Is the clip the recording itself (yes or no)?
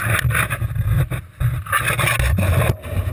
yes